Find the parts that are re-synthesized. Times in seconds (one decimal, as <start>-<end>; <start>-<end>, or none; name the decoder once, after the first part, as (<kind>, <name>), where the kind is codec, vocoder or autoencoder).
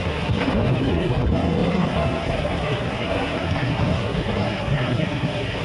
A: 0.0-5.6 (codec, SNAC)